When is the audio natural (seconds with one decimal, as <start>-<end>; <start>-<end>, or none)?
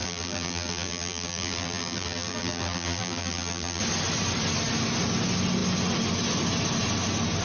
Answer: 3.8-7.4